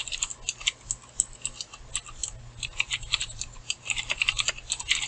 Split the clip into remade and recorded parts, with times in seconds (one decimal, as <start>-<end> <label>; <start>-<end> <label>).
0.0-2.2 recorded; 2.2-4.5 remade; 4.5-5.1 recorded